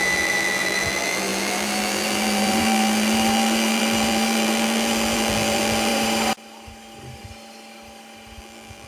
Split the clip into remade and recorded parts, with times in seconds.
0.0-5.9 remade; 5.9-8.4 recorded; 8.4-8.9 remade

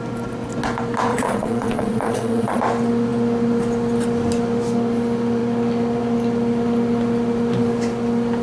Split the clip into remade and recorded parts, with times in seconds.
0.0-1.1 recorded; 1.1-2.6 remade; 2.6-8.4 recorded

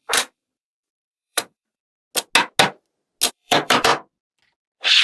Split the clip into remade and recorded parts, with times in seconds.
0.0-1.8 remade; 1.8-3.3 recorded; 3.3-3.9 remade; 3.9-5.0 recorded

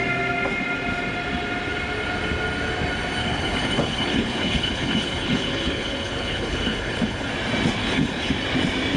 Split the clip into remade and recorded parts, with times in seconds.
0.0-3.2 recorded; 3.2-7.3 remade; 7.3-7.8 recorded; 7.8-8.3 remade; 8.3-9.0 recorded